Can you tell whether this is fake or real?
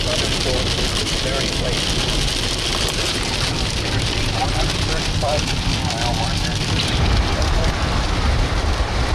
fake